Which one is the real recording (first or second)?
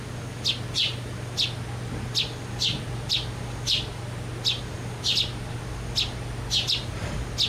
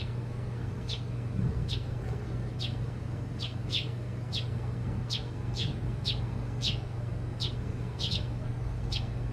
first